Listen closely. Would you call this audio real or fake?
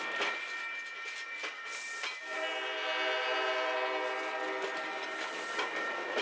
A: real